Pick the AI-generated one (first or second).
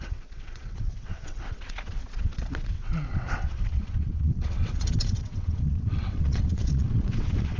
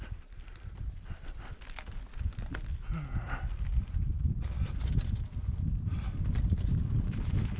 first